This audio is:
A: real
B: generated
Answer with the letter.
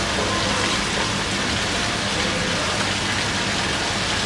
A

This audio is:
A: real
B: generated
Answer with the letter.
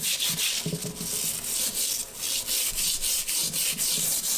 A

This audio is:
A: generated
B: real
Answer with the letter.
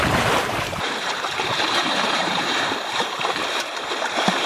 A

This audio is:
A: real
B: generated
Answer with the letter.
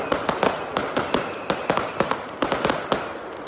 A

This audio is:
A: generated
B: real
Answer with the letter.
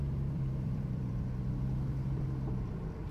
A